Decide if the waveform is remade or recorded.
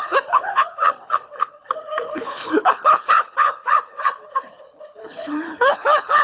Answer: remade